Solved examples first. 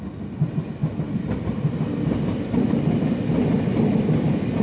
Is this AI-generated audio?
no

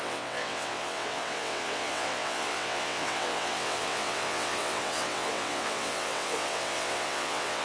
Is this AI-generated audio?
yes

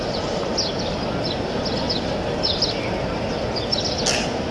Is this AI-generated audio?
no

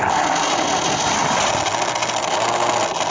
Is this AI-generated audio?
no